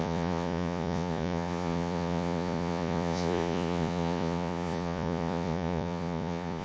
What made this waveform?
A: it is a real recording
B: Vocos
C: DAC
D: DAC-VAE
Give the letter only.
B